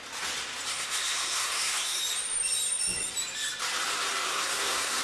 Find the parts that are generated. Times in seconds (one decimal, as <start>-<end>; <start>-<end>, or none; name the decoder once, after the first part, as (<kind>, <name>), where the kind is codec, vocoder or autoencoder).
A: 0.7-2.0 (codec, SNAC); 4.3-5.0